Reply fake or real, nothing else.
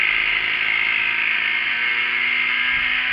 real